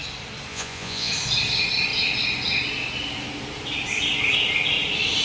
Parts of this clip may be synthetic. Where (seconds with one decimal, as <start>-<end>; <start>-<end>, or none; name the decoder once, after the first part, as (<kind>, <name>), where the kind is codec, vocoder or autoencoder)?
0.5-1.1 (vocoder, Vocos)